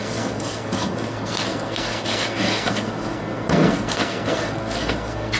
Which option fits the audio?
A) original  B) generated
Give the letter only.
B